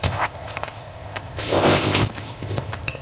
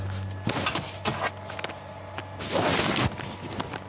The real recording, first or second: second